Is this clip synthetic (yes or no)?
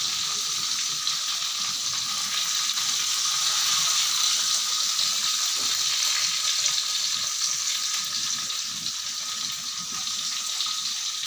no